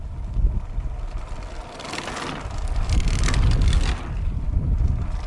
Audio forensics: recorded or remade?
recorded